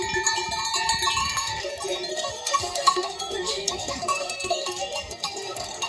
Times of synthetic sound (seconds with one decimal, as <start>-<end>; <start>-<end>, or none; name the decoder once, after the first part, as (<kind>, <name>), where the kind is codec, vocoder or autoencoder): 1.2-1.7 (codec, SNAC); 2.1-5.9